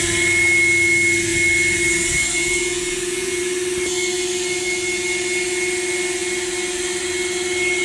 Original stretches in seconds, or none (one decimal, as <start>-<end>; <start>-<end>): 0.0-2.4; 3.4-7.8